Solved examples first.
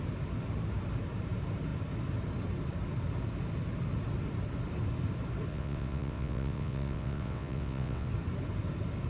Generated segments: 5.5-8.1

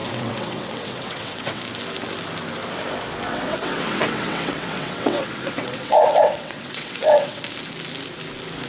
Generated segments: 0.0-1.6; 3.3-7.4

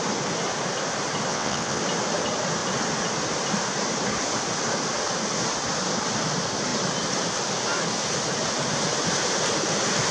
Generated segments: 1.3-1.8

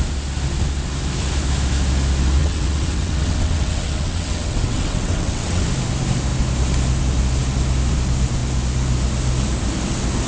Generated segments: 2.4-5.6